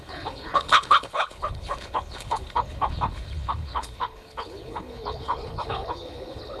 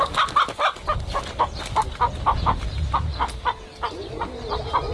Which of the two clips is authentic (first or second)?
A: second